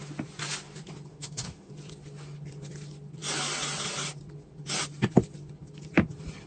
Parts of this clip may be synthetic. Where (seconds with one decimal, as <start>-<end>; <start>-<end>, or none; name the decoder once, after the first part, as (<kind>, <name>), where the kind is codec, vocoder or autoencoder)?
1.1-1.7 (autoencoder, DAC-VAE)